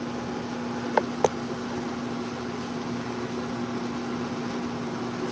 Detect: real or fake real